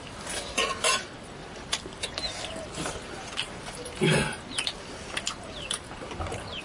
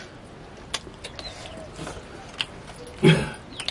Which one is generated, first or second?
first